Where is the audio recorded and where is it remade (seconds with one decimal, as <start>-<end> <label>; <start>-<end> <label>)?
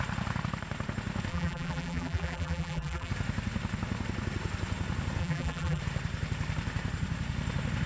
0.0-1.3 recorded; 1.3-3.1 remade; 3.1-5.2 recorded; 5.2-5.8 remade; 5.8-7.9 recorded